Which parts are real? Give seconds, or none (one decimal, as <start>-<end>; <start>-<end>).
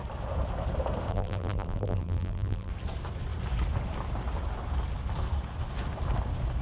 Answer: 0.0-1.1; 2.7-6.6